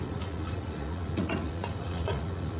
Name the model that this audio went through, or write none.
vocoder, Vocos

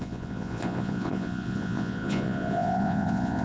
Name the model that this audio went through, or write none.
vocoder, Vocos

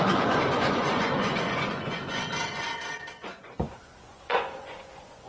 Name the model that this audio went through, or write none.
vocoder, Vocos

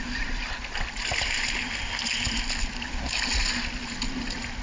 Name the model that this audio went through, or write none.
none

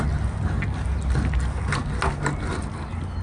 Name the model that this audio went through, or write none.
none